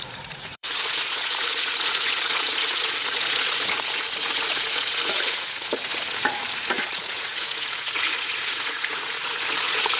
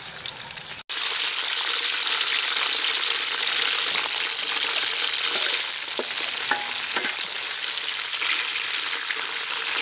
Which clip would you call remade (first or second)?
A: first